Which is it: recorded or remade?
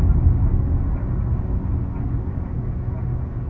recorded